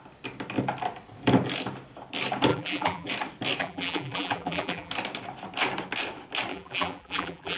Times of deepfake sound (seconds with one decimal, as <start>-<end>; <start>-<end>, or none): 2.5-3.1; 3.6-4.9; 6.5-7.6